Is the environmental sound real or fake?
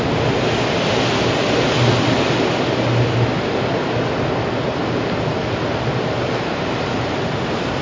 real